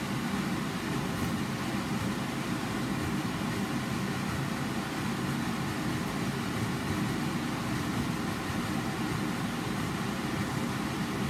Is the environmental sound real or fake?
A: real